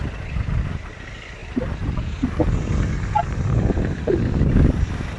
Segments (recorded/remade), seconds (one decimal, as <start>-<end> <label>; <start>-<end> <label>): 0.0-1.4 recorded; 1.4-4.5 remade; 4.5-5.2 recorded